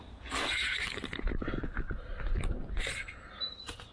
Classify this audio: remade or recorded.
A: recorded